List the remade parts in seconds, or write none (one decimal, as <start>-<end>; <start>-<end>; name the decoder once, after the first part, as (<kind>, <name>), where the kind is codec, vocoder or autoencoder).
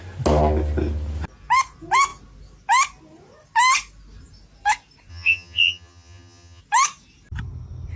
5.1-6.6 (vocoder, HiFi-GAN)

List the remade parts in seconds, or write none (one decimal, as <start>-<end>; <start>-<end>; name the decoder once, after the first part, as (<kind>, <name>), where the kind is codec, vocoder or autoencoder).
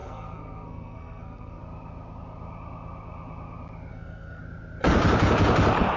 0.0-1.6 (codec, SNAC); 3.9-4.4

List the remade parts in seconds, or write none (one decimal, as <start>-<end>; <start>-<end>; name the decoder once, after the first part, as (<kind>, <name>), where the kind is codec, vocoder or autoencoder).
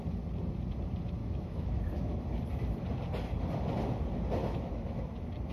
1.2-2.2 (autoencoder, DAC-VAE); 4.4-5.1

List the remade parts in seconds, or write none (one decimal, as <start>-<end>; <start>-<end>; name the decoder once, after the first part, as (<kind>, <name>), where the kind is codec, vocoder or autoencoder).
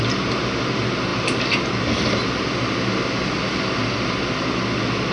none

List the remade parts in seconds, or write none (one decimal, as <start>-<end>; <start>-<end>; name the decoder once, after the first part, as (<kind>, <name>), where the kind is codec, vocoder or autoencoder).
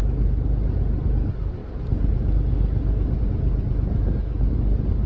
none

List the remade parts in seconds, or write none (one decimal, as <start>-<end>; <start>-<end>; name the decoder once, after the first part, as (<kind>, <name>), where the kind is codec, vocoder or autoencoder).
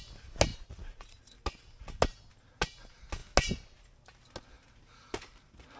0.5-1.2 (vocoder, Vocos)